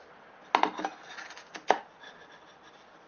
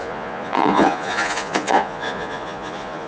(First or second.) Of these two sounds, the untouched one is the first